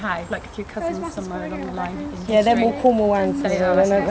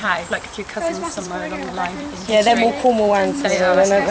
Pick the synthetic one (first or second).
second